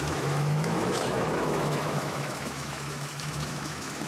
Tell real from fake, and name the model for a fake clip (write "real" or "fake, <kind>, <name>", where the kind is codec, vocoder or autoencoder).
fake, autoencoder, DAC-VAE